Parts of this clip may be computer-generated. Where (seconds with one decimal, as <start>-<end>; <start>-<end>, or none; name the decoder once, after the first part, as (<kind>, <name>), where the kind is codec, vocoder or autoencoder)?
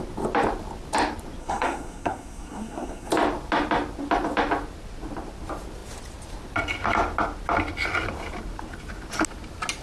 1.4-3.1 (codec, SNAC)